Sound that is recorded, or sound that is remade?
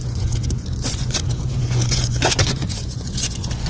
remade